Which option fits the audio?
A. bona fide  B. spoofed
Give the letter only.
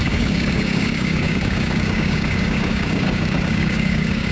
B